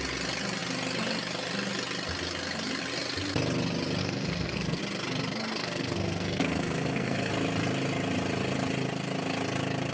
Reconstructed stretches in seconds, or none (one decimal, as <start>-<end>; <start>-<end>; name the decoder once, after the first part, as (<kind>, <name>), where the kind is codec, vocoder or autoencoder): 4.0-4.8 (codec, SNAC); 5.6-7.3